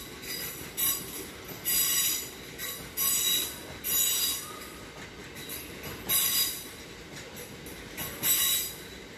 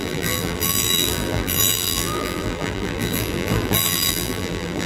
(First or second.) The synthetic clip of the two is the second